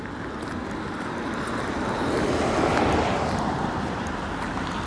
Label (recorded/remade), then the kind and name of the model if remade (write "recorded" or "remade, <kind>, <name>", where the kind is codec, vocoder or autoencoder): recorded